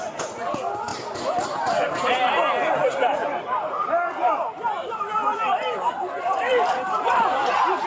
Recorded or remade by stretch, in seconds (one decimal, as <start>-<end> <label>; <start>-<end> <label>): 0.0-0.9 recorded; 0.9-4.3 remade; 4.3-6.5 recorded; 6.5-7.5 remade; 7.5-7.9 recorded